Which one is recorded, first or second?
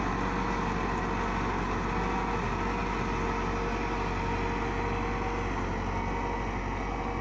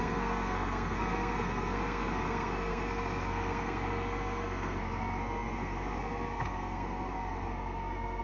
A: first